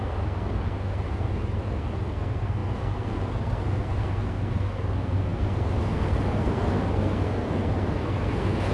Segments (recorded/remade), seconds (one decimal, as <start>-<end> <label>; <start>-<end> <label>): 0.0-8.7 remade